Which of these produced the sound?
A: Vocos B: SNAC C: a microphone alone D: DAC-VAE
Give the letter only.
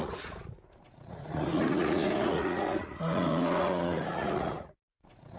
A